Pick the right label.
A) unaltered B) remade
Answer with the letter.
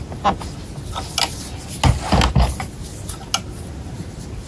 A